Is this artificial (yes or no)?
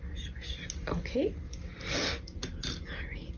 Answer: no